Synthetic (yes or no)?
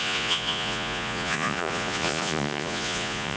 yes